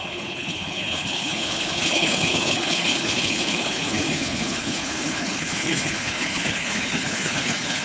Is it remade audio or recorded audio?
remade